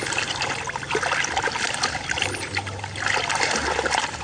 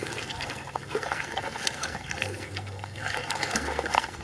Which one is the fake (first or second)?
second